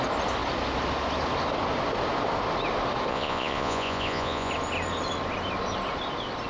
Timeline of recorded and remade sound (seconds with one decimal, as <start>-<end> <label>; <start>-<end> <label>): 0.0-3.1 recorded; 3.1-4.5 remade; 4.5-6.5 recorded